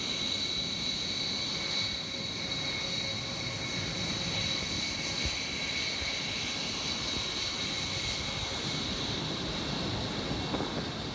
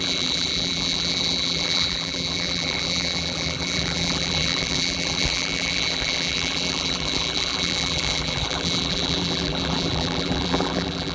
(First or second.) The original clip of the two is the first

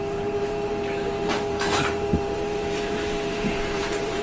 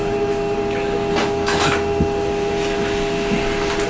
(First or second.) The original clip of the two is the second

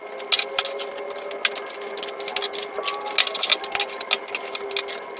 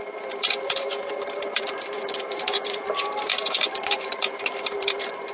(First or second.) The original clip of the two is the first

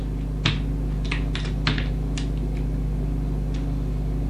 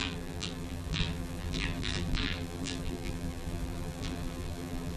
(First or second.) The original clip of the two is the first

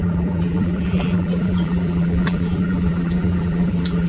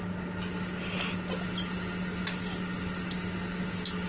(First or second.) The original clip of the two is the second